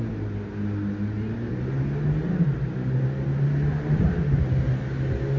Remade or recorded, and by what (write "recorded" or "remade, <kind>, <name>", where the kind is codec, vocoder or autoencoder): recorded